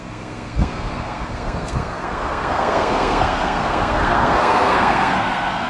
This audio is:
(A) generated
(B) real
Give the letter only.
A